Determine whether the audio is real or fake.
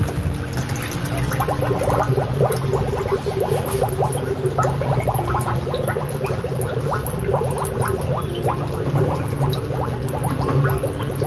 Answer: real